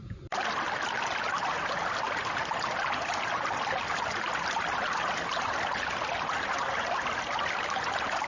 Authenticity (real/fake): real